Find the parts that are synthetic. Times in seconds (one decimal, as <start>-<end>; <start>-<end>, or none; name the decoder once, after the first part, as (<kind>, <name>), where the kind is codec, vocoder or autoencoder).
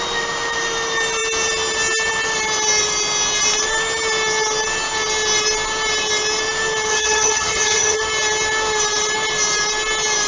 6.9-8.0 (vocoder, HiFi-GAN)